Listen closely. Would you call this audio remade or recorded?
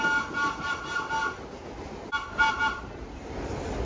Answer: recorded